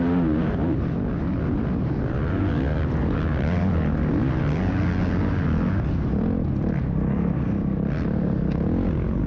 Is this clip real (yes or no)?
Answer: yes